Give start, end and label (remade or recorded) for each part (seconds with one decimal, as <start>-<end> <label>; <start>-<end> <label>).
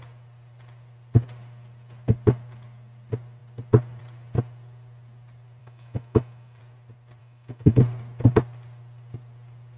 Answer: 0.0-5.6 recorded; 5.6-6.6 remade; 6.6-7.2 recorded; 7.2-7.8 remade; 7.8-9.8 recorded